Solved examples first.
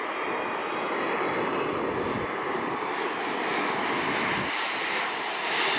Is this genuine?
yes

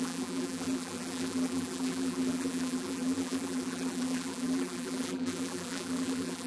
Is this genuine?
no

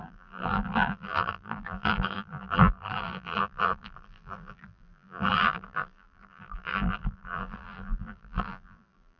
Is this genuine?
no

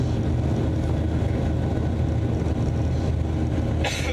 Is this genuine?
yes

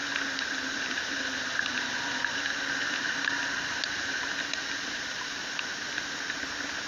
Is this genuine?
yes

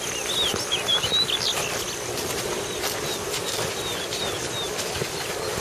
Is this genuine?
yes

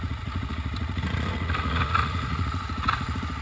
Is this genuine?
no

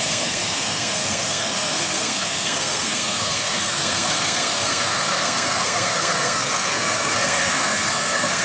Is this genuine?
no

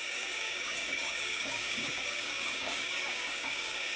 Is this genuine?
no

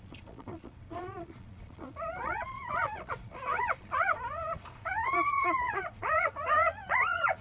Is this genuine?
no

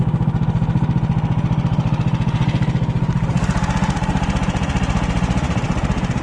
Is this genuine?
yes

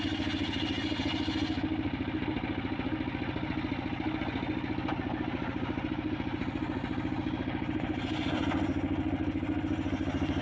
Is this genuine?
yes